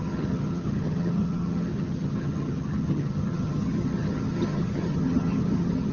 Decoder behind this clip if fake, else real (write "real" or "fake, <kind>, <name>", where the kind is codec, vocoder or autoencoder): fake, vocoder, HiFi-GAN